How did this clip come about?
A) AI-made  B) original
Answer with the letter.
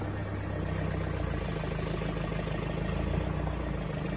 B